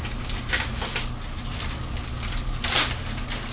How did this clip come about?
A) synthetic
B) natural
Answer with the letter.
B